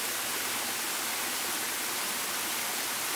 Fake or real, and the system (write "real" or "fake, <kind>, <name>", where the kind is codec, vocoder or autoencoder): real